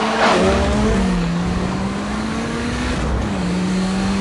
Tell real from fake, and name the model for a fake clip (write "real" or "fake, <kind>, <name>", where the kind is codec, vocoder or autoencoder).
fake, codec, DAC